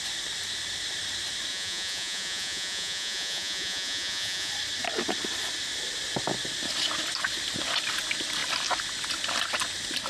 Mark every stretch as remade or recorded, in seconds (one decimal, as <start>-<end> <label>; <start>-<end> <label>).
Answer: 0.0-1.5 recorded; 1.5-4.5 remade; 4.5-10.1 recorded